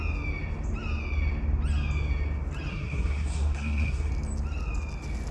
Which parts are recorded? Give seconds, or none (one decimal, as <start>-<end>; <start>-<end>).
0.0-2.7; 4.1-5.3